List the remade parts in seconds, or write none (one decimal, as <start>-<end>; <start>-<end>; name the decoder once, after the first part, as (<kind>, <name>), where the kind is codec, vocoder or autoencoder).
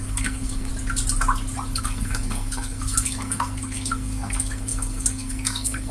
0.0-0.7 (codec, SNAC); 1.8-5.9